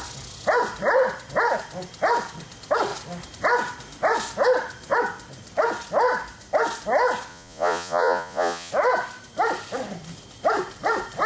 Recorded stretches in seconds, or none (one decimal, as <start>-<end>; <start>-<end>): 0.0-7.3; 8.7-11.3